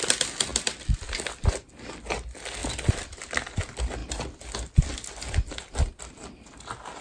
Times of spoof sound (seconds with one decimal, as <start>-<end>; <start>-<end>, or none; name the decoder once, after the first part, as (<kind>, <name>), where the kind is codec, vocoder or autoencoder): none